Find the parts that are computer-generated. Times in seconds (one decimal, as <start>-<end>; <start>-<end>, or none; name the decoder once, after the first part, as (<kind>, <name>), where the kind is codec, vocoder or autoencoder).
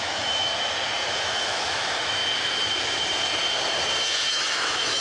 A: 0.0-0.5 (autoencoder, DAC-VAE); 1.1-2.2; 4.3-5.0